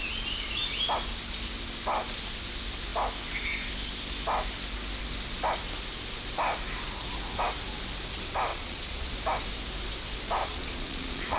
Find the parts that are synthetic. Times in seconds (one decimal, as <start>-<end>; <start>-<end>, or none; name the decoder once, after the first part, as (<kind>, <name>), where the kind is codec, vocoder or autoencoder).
8.5-9.1 (vocoder, Vocos); 10.4-11.4

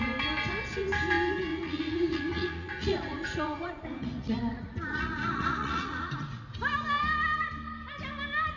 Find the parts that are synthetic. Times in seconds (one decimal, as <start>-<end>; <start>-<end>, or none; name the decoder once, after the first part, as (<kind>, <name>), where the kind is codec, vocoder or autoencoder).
1.5-6.4 (vocoder, Vocos)

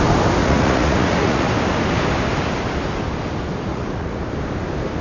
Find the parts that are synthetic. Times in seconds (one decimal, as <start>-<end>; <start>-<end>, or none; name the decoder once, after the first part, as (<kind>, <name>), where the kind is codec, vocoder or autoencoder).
0.4-1.5 (vocoder, Vocos); 3.7-4.2

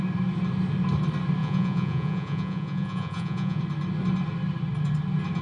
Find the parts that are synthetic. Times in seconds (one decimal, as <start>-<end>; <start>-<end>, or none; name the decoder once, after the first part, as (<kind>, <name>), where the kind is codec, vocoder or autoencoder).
1.4-3.6 (vocoder, Vocos)

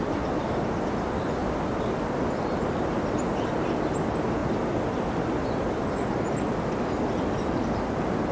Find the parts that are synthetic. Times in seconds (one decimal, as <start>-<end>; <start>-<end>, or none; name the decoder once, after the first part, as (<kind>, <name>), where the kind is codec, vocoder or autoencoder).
none